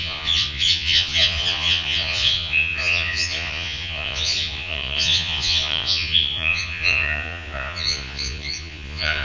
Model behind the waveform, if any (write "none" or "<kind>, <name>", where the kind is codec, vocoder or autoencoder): vocoder, Vocos